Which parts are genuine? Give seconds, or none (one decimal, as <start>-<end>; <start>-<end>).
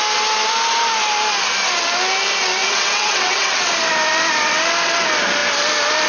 0.0-2.6; 3.7-6.1